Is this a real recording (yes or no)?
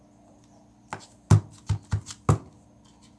yes